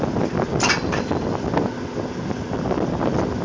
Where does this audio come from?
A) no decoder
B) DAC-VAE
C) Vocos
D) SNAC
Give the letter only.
A